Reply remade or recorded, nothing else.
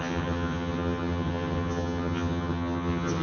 remade